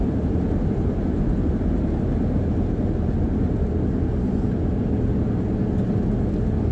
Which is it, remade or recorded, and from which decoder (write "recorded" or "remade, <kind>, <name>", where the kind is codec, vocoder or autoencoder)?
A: recorded